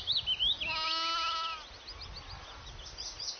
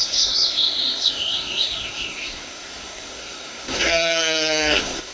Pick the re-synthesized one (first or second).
second